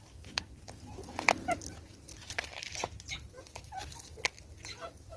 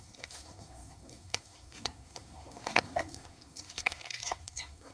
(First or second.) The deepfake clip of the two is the second